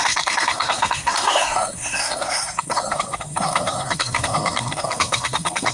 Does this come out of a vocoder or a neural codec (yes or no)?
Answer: yes